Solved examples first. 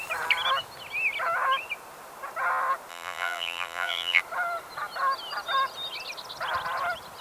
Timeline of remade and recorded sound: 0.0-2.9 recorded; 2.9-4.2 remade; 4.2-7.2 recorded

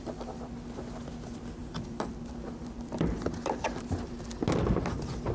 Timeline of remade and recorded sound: 0.0-1.6 recorded; 1.6-4.3 remade; 4.3-5.3 recorded

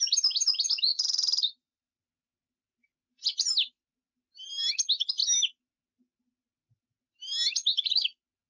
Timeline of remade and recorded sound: 0.0-0.9 recorded; 0.9-2.1 remade; 2.1-8.5 recorded

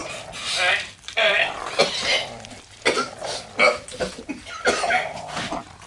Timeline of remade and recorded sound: 0.0-0.7 recorded; 0.7-1.8 remade; 1.8-4.3 recorded; 4.3-5.9 remade